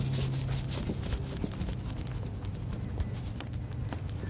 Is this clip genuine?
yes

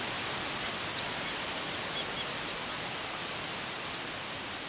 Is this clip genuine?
yes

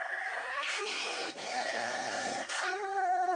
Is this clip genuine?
no